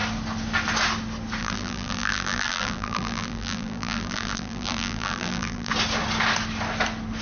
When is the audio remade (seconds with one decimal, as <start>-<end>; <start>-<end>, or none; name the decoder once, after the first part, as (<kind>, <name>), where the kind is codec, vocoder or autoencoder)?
1.4-5.7 (vocoder, BigVGAN v2)